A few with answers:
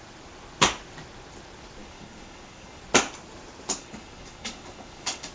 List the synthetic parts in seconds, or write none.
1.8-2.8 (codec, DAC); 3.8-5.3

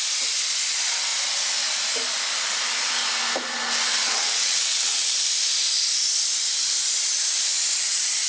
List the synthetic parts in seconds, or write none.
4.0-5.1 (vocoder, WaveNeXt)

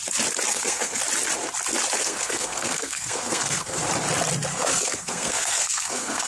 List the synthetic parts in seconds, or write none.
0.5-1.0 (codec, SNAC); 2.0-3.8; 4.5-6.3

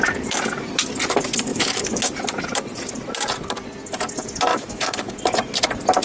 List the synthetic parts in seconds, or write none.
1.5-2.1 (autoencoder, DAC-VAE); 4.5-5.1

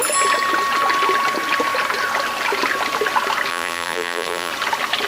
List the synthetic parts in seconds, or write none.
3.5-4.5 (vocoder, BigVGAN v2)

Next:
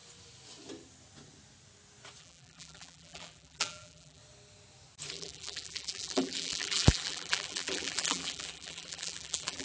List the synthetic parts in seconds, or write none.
2.2-4.2 (vocoder, BigVGAN v2); 5.1-9.6